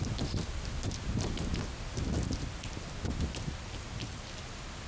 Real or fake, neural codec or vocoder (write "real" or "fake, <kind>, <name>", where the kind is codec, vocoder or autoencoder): real